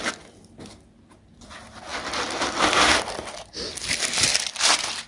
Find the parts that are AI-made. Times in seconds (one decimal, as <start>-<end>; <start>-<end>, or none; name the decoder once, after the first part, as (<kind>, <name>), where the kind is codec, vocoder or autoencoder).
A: none